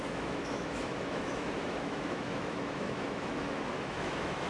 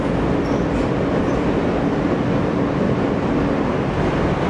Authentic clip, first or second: second